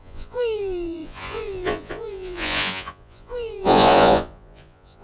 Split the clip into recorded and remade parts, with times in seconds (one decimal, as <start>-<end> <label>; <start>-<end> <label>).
0.0-5.0 remade